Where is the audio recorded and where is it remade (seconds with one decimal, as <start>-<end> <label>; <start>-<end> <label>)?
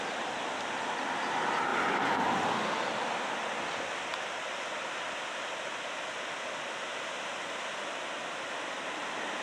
0.0-9.4 recorded